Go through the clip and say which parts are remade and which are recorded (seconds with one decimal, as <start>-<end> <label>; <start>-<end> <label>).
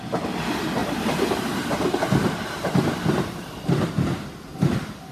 0.0-0.8 recorded; 0.8-3.9 remade; 3.9-5.1 recorded